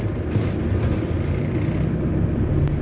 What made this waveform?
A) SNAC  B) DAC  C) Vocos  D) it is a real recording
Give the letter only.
D